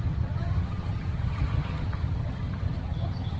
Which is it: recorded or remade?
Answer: remade